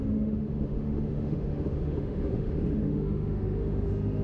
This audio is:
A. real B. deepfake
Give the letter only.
B